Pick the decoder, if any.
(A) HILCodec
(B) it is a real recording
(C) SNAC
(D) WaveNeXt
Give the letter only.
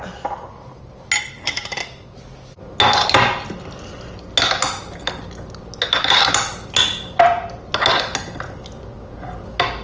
B